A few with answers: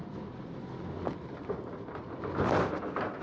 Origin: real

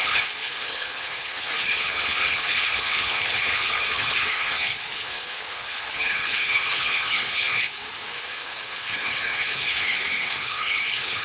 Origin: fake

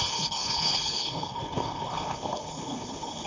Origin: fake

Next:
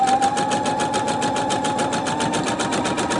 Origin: real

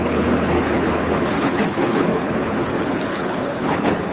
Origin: fake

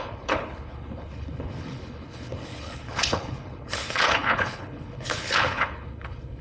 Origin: fake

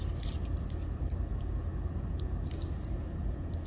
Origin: real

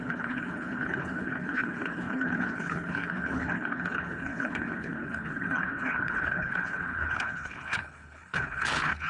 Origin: fake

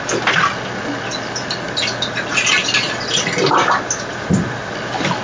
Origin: real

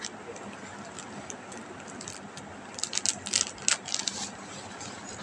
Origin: real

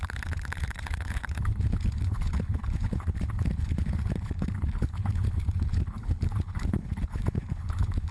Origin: fake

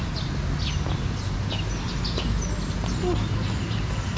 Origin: real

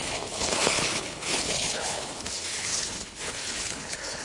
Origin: fake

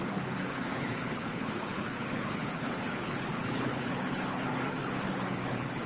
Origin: fake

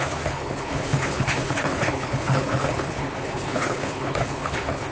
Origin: fake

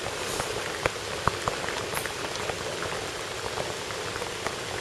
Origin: real